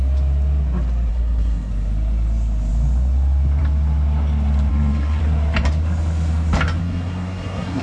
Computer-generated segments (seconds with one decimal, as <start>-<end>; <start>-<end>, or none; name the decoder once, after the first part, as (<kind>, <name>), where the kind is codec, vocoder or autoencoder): 1.1-1.7 (codec, SNAC); 4.7-5.2; 6.8-7.8